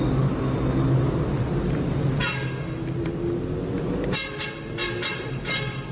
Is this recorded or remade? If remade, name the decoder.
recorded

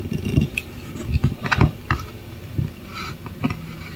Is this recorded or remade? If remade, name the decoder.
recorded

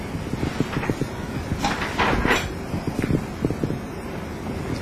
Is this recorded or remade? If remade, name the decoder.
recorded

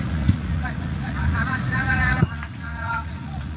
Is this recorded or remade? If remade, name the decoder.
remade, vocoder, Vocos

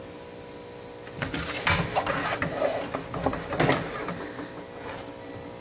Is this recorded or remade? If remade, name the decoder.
recorded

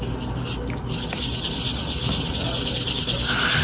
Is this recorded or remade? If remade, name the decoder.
recorded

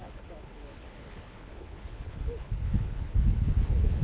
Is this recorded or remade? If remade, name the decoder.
remade, codec, HILCodec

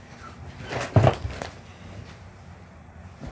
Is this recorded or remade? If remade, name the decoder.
recorded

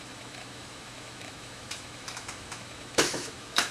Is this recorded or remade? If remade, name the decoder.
remade, autoencoder, DAC-VAE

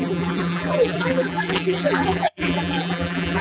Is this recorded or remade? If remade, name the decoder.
remade, vocoder, BigVGAN v2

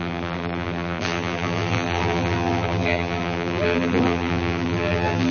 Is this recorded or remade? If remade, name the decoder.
remade, vocoder, BigVGAN v2